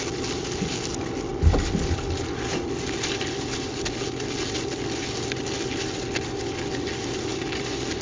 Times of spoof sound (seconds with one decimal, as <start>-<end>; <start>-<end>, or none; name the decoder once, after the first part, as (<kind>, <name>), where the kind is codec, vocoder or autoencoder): none